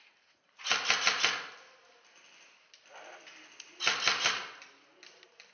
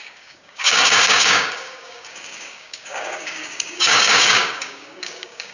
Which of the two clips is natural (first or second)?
first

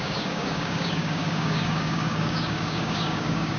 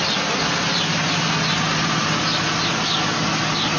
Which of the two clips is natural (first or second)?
second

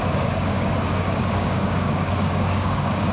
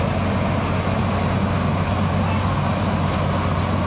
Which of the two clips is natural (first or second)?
second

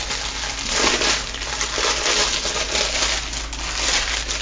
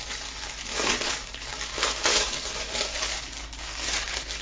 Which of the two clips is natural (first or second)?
first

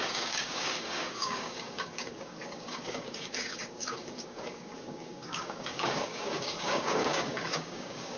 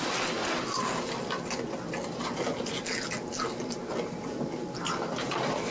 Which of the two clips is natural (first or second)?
second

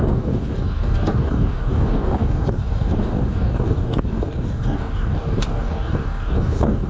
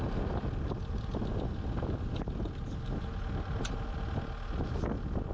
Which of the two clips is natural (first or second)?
second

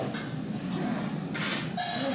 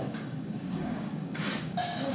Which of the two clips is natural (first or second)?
first